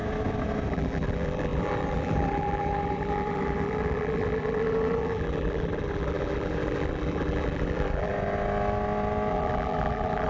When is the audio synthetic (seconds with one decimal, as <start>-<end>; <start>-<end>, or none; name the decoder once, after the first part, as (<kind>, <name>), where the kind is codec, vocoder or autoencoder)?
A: 0.7-8.1 (vocoder, BigVGAN v2); 9.3-10.3